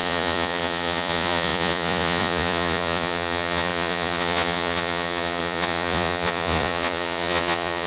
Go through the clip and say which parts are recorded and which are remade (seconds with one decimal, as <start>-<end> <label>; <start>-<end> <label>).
0.0-7.9 remade